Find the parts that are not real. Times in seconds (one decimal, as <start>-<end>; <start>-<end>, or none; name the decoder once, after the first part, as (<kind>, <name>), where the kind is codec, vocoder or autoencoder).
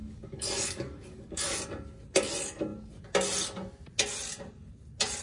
0.0-1.6 (codec, DAC)